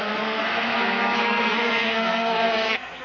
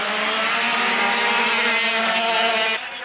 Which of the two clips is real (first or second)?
second